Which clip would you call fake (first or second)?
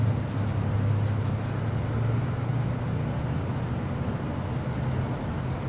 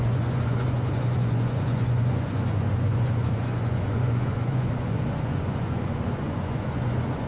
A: second